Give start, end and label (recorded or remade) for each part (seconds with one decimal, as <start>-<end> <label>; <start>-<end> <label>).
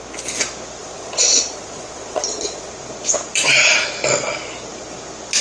0.0-0.8 recorded; 0.8-2.7 remade; 2.7-5.4 recorded